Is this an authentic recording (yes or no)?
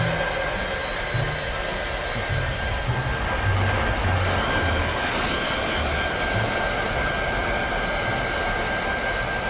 yes